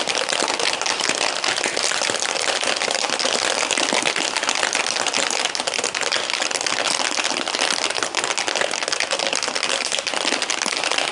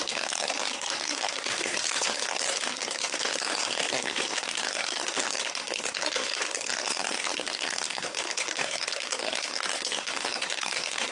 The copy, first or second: second